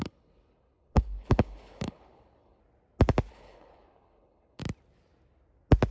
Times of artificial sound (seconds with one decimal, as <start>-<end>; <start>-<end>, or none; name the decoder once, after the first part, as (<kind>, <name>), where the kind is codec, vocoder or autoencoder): 0.0-2.6 (codec, HILCodec); 3.3-4.6